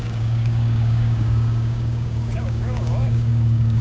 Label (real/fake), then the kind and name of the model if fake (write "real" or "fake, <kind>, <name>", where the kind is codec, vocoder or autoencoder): fake, codec, DAC